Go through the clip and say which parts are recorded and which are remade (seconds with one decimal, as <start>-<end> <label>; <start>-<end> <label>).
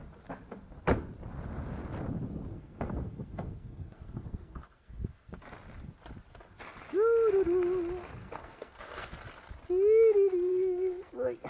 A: 0.0-2.5 recorded; 2.5-5.4 remade; 5.4-8.2 recorded; 8.2-9.1 remade; 9.1-10.5 recorded; 10.5-11.1 remade; 11.1-11.5 recorded